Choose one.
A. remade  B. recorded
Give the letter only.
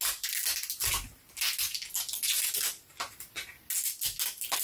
B